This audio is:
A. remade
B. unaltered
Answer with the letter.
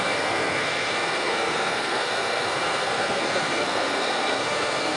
A